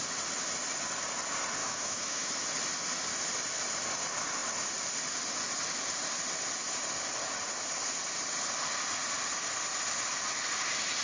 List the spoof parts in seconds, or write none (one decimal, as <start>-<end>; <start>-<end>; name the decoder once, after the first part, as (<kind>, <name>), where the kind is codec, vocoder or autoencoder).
1.6-2.3 (autoencoder, DAC-VAE)